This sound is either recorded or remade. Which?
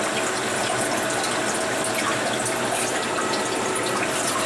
recorded